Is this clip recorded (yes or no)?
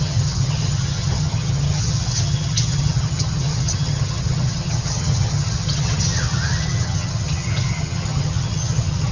no